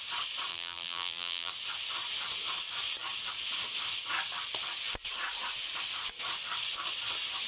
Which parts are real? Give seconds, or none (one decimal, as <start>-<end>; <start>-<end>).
0.0-0.5; 1.5-7.5